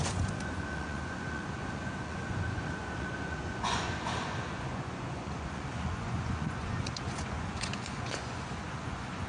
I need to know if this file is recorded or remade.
remade